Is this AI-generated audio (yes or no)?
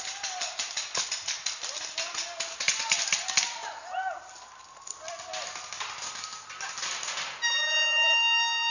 no